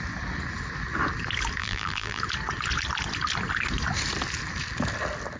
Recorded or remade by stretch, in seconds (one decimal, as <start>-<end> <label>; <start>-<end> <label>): 0.0-1.6 recorded; 1.6-2.2 remade; 2.2-5.4 recorded